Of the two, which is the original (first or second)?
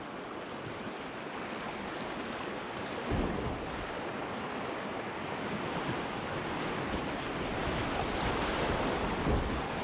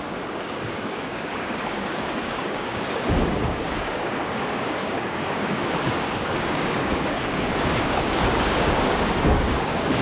first